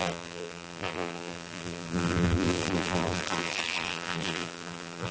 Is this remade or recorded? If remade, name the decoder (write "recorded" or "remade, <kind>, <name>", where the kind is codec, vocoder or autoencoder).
remade, vocoder, BigVGAN v2